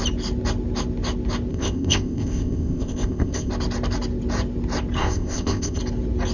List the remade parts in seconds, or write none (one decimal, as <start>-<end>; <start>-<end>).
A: 1.5-3.5; 5.0-5.8